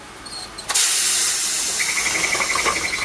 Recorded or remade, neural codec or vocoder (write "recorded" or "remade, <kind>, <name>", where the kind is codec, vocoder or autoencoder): recorded